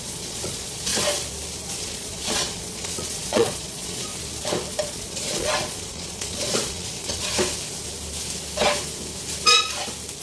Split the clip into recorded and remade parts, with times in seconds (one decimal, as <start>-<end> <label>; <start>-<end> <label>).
0.0-0.9 remade; 0.9-1.8 recorded; 1.8-4.1 remade; 4.1-4.7 recorded; 4.7-7.3 remade; 7.3-10.2 recorded